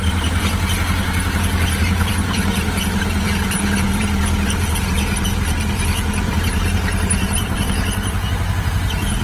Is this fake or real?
fake